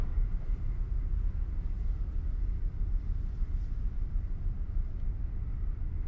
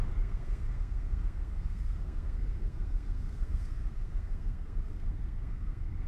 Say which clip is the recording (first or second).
first